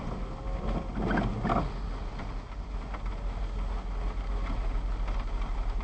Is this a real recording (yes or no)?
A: yes